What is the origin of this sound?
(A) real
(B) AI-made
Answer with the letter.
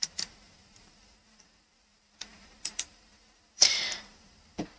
B